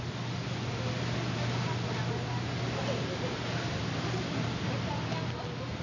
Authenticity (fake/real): real